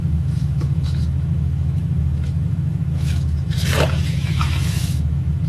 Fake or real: fake